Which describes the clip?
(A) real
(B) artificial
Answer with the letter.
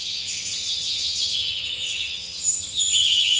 B